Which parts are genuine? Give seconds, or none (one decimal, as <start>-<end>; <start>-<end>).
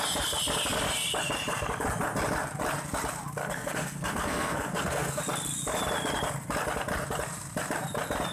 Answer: 0.0-3.4; 5.2-8.3